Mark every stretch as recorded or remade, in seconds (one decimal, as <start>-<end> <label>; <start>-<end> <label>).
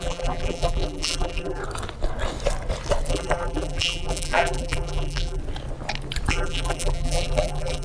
0.0-1.6 remade; 1.6-3.1 recorded; 3.1-5.4 remade; 5.4-6.3 recorded; 6.3-7.8 remade